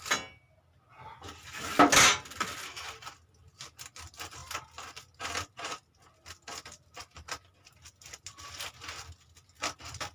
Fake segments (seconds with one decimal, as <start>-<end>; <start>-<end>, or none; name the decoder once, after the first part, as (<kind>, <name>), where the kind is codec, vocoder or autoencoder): none